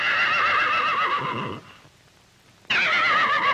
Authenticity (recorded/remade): recorded